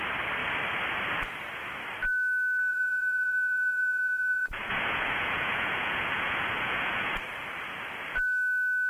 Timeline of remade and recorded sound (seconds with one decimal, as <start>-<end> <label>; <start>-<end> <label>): 0.0-2.7 recorded; 2.7-7.1 remade; 7.1-8.9 recorded